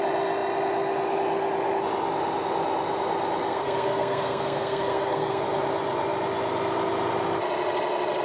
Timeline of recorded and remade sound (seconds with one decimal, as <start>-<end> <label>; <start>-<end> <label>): 0.0-3.5 recorded; 3.5-5.4 remade; 5.4-8.2 recorded